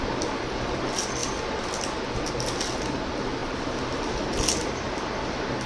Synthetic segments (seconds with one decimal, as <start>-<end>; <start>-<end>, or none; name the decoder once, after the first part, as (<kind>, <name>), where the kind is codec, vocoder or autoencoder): none